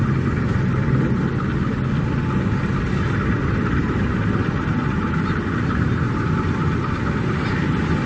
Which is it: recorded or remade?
recorded